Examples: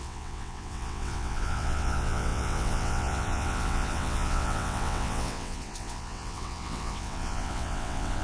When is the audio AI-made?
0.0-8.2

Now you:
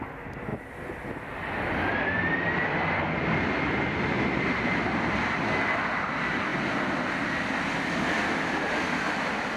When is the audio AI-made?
none

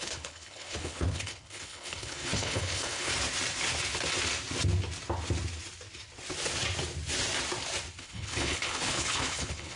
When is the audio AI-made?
0.0-3.1; 8.0-9.8

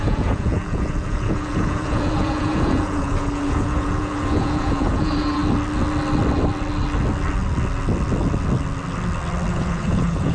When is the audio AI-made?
0.0-5.4; 9.5-10.3

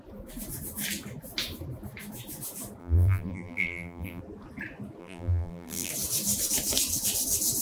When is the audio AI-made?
2.8-4.2; 5.0-5.9

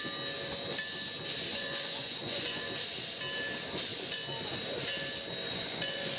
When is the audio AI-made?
1.5-2.6; 3.9-4.6; 5.4-6.2

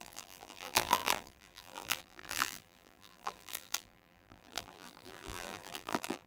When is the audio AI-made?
0.0-6.3

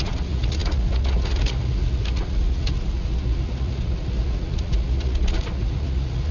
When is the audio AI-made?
0.0-6.3